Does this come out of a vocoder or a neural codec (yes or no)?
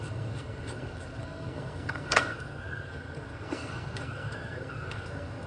yes